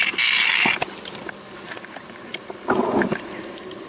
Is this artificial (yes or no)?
no